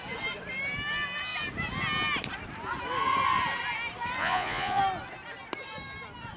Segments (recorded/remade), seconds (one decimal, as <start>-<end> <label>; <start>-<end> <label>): 0.0-4.2 recorded; 4.2-4.8 remade; 4.8-6.4 recorded